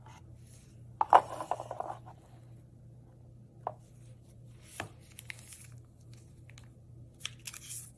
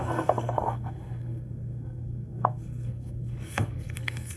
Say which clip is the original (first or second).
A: first